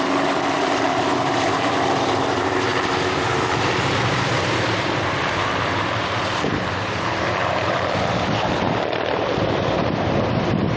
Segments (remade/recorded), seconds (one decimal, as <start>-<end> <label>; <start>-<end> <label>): 0.0-10.8 remade